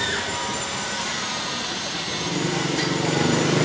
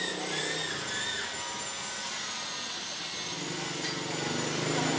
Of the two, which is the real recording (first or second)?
second